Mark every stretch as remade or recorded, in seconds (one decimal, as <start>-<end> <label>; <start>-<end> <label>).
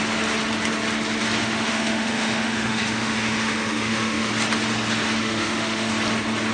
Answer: 0.0-1.4 recorded; 1.4-4.3 remade; 4.3-5.2 recorded; 5.2-5.9 remade; 5.9-6.5 recorded